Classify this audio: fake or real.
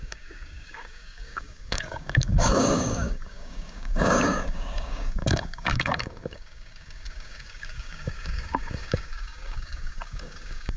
fake